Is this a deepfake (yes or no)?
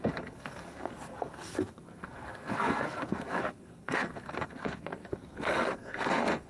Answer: yes